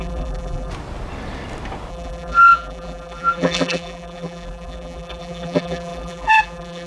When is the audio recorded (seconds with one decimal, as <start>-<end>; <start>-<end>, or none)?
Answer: 0.7-1.9